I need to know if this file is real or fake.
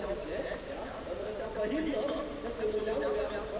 real